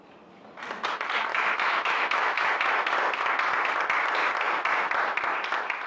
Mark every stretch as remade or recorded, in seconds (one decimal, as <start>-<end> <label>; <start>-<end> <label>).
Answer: 0.0-1.3 recorded; 1.3-2.5 remade; 2.5-5.9 recorded